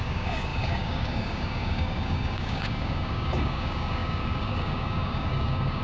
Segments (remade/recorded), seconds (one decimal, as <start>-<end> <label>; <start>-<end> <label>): 0.0-5.8 remade